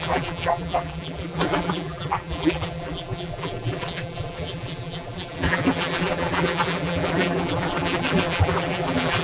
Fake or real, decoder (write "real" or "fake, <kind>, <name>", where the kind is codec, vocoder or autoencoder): fake, vocoder, BigVGAN v2